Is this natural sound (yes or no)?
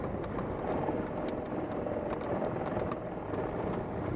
no